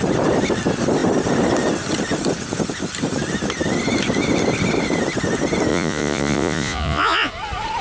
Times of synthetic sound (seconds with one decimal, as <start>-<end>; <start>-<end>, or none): 5.7-7.3